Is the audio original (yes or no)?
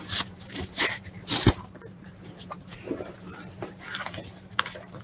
no